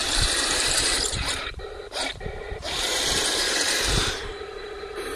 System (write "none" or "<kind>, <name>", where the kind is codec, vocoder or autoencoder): vocoder, BigVGAN v2